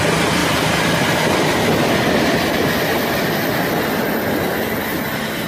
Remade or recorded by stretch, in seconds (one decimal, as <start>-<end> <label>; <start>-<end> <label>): 0.0-0.4 recorded; 0.4-3.7 remade; 3.7-5.5 recorded